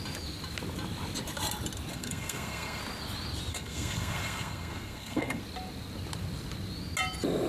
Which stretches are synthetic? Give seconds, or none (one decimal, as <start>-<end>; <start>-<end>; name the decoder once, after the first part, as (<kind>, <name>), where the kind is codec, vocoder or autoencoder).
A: 1.9-2.8 (codec, SNAC); 3.5-5.4